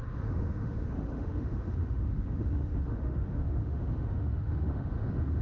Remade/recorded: remade